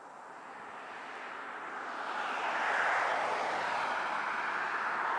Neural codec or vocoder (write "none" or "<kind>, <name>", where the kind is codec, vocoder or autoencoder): none